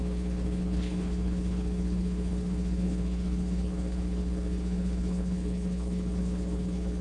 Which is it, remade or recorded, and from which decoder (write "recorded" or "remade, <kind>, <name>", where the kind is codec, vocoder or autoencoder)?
remade, codec, HILCodec